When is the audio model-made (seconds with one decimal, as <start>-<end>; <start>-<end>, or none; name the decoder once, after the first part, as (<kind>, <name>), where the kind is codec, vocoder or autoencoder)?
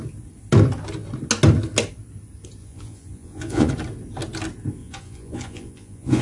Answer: 2.6-3.7 (vocoder, Vocos); 4.8-6.2